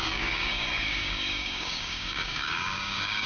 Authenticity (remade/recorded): remade